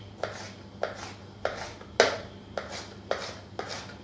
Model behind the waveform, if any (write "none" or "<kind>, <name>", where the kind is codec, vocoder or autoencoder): none